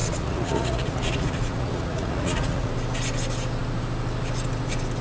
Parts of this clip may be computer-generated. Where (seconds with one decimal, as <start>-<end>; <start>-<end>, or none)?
0.0-2.7